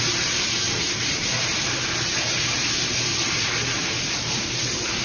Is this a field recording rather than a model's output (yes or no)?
no